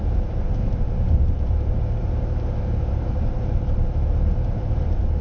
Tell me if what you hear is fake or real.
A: fake